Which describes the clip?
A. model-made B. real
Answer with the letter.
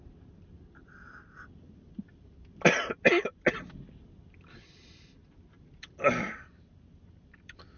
B